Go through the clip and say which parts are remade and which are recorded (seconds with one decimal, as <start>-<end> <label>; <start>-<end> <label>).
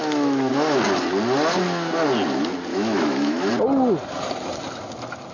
0.0-0.5 remade; 0.5-2.7 recorded; 2.7-3.5 remade; 3.5-5.3 recorded